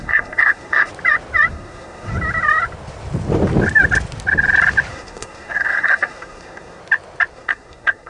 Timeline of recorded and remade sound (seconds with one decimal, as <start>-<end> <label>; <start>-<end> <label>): 0.0-0.9 remade; 0.9-1.5 recorded; 1.5-2.1 remade; 2.1-4.9 recorded; 4.9-6.8 remade; 6.8-7.3 recorded; 7.3-8.1 remade

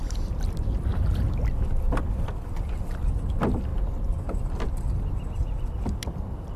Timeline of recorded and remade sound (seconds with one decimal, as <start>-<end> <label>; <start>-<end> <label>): 0.0-6.6 recorded

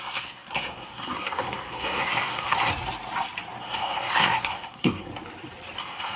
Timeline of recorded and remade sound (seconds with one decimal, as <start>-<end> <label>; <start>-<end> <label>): 0.0-2.7 remade; 2.7-3.6 recorded; 3.6-5.1 remade; 5.1-5.8 recorded; 5.8-6.2 remade